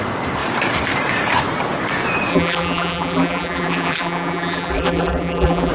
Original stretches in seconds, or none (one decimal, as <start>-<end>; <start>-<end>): 0.0-2.3